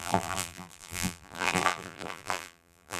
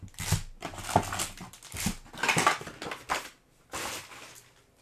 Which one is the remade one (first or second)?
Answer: first